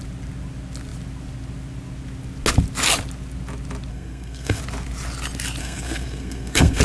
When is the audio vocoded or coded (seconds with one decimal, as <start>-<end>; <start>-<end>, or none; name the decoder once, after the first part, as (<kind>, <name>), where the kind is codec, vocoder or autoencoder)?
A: 3.9-4.6 (codec, SNAC); 5.6-6.8